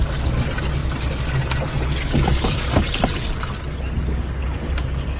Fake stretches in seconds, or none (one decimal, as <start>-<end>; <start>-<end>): none

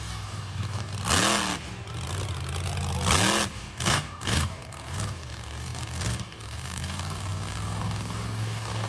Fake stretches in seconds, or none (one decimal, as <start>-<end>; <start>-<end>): 0.0-0.9; 3.5-8.9

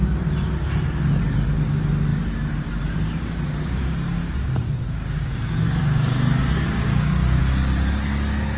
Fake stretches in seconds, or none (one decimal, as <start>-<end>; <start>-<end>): 4.2-7.4

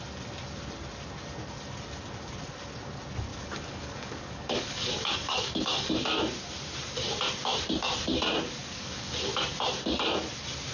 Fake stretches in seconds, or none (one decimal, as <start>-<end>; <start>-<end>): 3.3-5.9; 8.6-9.3

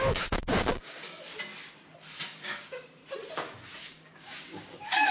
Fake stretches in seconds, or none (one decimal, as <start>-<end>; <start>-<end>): 0.0-1.3; 2.2-3.0; 3.8-5.1